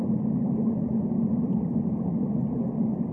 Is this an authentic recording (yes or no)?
yes